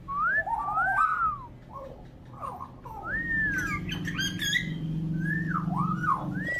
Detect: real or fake real